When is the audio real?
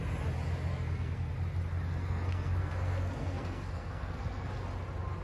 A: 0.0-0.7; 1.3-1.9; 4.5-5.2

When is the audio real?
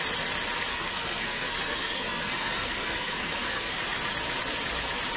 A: 0.0-0.7; 3.8-5.2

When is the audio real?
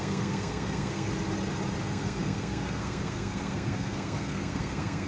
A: 1.1-1.8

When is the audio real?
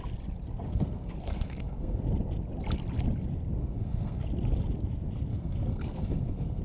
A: 0.0-0.7; 2.0-3.6; 4.2-5.3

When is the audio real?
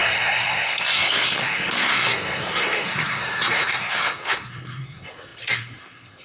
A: none